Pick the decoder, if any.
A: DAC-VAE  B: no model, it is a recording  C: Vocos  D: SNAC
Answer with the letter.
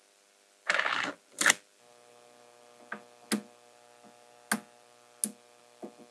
B